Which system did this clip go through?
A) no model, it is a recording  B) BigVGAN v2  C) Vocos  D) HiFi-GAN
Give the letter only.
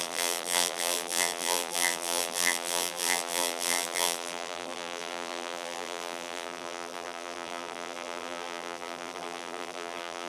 B